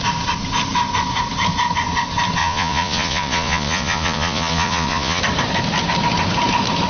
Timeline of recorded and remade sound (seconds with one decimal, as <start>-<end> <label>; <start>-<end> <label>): 0.0-2.4 recorded; 2.4-5.2 remade; 5.2-6.9 recorded